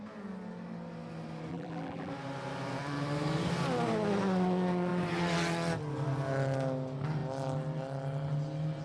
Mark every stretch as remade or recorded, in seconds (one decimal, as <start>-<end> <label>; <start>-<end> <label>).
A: 0.0-1.5 recorded; 1.5-2.1 remade; 2.1-8.8 recorded